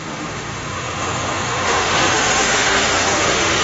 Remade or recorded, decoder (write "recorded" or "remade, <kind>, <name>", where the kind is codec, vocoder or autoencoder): remade, autoencoder, DAC-VAE